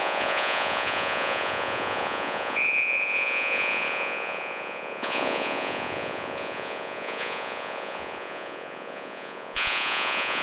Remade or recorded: remade